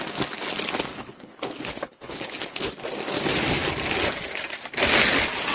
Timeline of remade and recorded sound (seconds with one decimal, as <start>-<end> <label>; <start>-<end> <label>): 0.0-0.9 recorded; 0.9-2.7 remade; 2.7-5.5 recorded